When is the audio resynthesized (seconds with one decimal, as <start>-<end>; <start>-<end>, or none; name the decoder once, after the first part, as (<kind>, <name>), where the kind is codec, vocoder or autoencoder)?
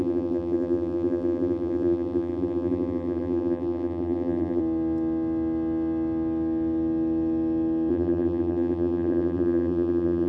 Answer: 0.0-4.6 (vocoder, BigVGAN v2); 7.9-10.3